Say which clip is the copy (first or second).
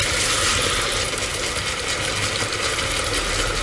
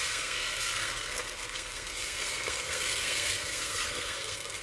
second